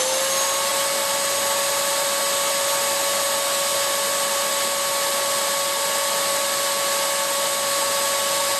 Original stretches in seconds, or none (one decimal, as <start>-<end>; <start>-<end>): 0.0-8.6